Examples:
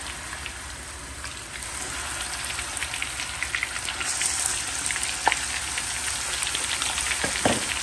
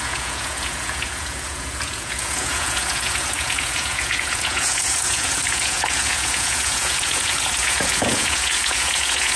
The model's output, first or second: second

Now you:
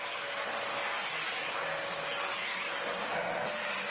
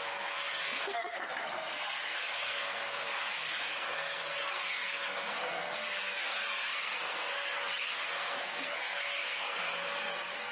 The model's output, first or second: second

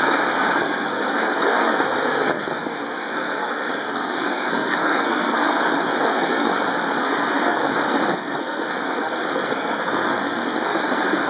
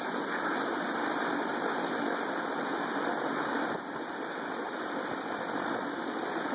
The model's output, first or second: first